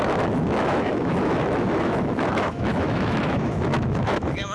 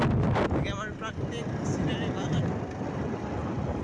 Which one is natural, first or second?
second